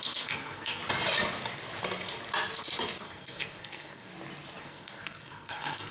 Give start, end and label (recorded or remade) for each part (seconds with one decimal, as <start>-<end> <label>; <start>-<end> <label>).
0.0-0.8 remade; 0.8-3.0 recorded; 3.0-4.1 remade; 4.1-4.6 recorded; 4.6-5.9 remade